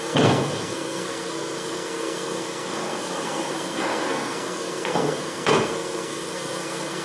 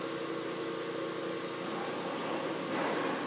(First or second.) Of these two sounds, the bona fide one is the second